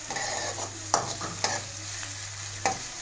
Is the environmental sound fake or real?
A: real